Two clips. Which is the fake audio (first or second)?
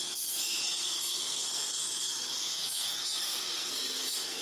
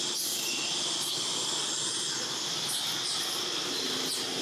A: first